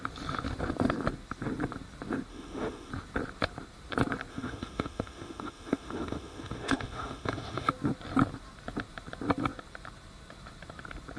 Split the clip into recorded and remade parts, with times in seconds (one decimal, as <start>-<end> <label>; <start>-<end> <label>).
0.0-2.3 recorded; 2.3-2.9 remade; 2.9-4.3 recorded; 4.3-7.7 remade; 7.7-11.2 recorded